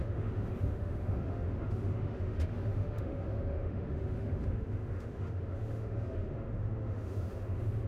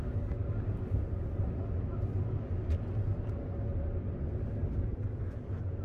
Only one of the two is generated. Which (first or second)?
first